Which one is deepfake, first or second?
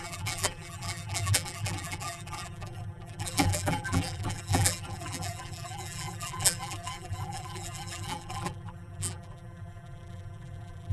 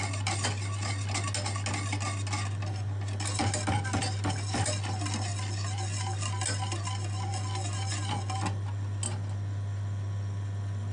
first